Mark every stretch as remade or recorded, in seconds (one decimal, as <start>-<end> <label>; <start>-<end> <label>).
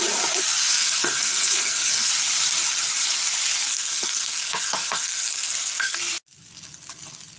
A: 0.0-0.6 recorded; 0.6-2.1 remade; 2.1-3.7 recorded; 3.7-6.0 remade; 6.0-7.4 recorded